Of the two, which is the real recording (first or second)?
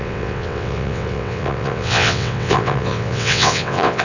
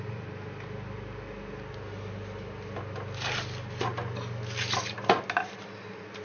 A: second